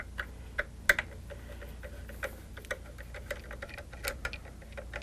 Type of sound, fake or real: real